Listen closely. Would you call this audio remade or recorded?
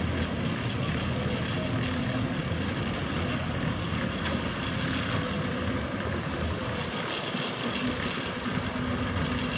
recorded